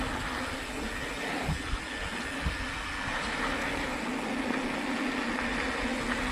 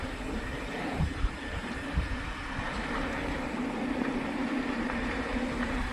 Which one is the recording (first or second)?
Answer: first